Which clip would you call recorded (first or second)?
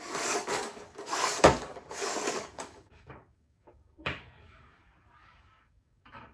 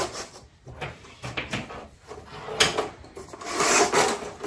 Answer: second